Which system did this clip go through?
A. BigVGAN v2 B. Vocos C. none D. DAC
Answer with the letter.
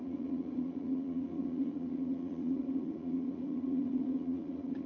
B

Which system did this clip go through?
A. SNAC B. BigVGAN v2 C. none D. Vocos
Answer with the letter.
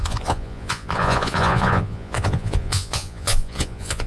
D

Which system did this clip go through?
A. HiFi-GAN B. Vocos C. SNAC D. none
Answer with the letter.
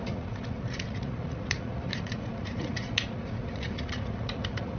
B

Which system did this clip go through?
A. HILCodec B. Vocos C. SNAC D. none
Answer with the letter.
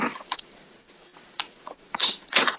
B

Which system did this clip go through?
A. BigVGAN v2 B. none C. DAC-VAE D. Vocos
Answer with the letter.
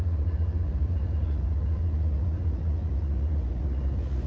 D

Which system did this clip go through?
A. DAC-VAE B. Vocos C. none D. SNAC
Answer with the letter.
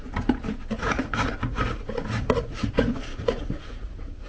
B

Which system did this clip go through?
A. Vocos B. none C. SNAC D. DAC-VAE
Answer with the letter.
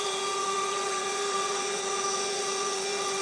A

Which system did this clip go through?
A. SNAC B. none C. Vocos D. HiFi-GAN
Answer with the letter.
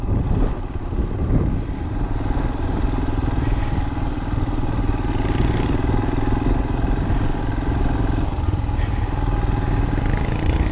B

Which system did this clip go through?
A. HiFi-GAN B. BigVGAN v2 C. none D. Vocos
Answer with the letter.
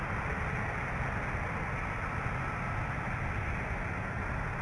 C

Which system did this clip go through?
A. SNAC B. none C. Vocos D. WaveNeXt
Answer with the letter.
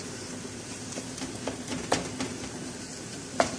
B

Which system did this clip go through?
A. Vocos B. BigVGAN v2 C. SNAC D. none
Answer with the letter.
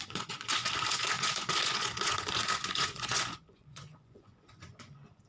A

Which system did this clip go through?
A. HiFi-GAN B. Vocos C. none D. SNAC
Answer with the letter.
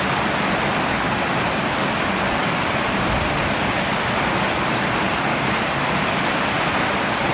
C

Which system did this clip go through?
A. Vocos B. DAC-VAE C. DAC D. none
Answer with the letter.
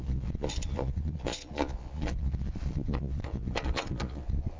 A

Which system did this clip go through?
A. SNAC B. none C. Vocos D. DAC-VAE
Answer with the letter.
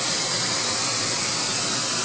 B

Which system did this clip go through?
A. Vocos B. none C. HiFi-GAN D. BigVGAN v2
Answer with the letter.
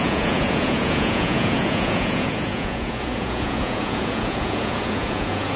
A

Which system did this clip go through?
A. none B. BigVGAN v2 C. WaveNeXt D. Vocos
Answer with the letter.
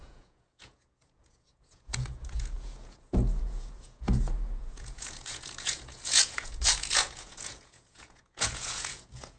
D